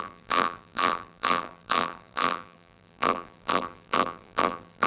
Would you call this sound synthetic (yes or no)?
yes